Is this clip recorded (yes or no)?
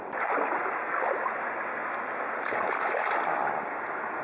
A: yes